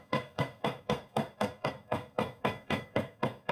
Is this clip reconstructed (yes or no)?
yes